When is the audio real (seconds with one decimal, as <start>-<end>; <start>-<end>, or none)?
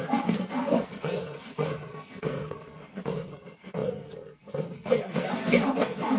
none